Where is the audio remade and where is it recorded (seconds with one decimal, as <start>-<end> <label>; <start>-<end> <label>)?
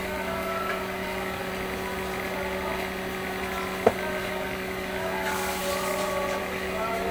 0.0-1.4 remade; 1.4-4.2 recorded; 4.2-5.6 remade; 5.6-6.4 recorded; 6.4-7.1 remade